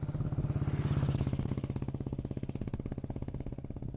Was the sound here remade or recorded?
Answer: recorded